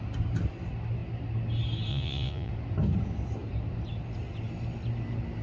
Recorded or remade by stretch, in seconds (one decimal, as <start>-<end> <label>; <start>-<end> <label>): 0.0-1.9 recorded; 1.9-2.5 remade; 2.5-5.4 recorded

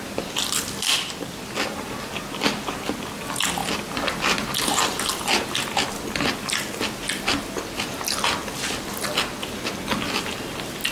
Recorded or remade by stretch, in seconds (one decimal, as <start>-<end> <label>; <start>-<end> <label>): 0.0-3.6 recorded; 3.6-4.7 remade; 4.7-10.9 recorded

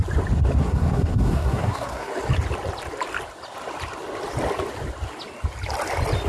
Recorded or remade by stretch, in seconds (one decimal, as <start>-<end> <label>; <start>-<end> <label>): 0.0-0.6 recorded; 0.6-2.1 remade; 2.1-6.3 recorded

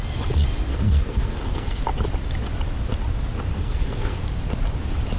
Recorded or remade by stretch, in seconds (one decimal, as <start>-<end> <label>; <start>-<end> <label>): 0.0-0.7 recorded; 0.7-1.8 remade; 1.8-3.5 recorded; 3.5-4.2 remade; 4.2-5.2 recorded

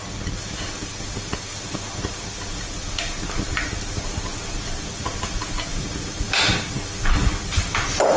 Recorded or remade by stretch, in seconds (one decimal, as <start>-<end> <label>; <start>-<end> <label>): 0.0-8.2 recorded